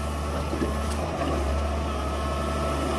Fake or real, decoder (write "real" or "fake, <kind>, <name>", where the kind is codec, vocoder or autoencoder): real